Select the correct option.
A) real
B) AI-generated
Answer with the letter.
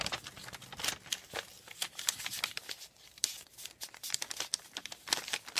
A